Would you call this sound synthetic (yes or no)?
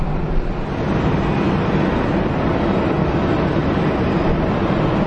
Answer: no